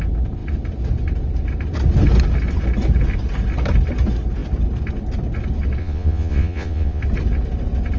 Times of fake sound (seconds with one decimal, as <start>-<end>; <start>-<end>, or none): 5.8-7.0